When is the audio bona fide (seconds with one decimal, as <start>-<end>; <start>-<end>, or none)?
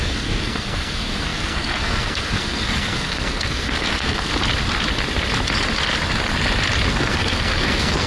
4.3-6.9